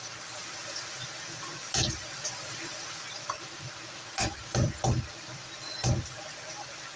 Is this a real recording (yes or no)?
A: yes